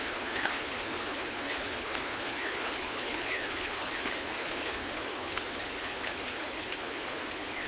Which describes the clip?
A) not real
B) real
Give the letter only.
A